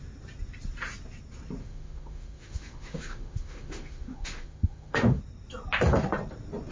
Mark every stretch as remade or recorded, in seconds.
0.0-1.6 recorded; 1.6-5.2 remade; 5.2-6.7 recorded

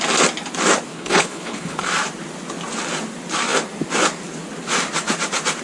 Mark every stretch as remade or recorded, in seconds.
0.0-0.9 recorded; 0.9-1.8 remade; 1.8-5.6 recorded

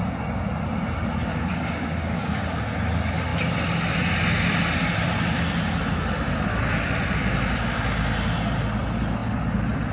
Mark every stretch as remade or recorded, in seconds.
0.0-1.3 recorded; 1.3-2.6 remade; 2.6-9.9 recorded

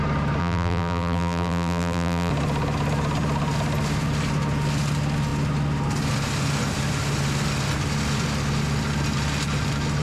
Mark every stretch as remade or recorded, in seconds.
0.0-0.4 recorded; 0.4-2.3 remade; 2.3-10.0 recorded

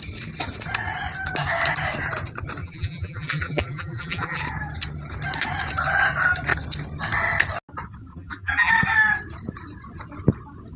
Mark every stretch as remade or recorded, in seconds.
0.0-2.6 recorded; 2.6-4.4 remade; 4.4-8.1 recorded; 8.1-8.7 remade; 8.7-10.8 recorded

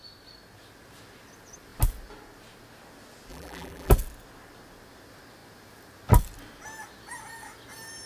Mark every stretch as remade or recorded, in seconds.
0.0-3.3 recorded; 3.3-3.9 remade; 3.9-8.1 recorded

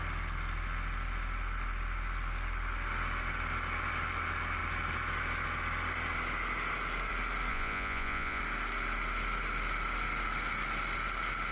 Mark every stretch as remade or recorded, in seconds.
0.0-7.5 recorded; 7.5-8.4 remade; 8.4-11.5 recorded

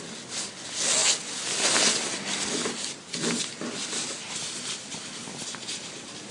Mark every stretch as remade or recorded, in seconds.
0.0-6.3 recorded